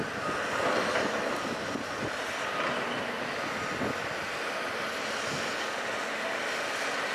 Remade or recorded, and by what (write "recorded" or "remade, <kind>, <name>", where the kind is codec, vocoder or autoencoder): recorded